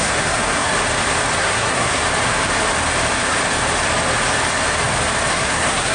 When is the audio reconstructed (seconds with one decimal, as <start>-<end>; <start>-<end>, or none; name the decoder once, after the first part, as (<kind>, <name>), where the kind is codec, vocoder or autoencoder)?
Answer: 0.0-0.7 (codec, SNAC); 1.4-2.0; 5.3-5.9